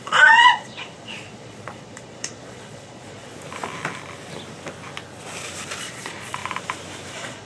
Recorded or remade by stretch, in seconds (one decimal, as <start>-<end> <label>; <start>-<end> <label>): 0.0-3.3 remade; 3.3-5.8 recorded; 5.8-6.4 remade; 6.4-7.1 recorded; 7.1-7.5 remade